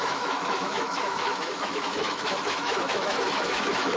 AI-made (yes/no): yes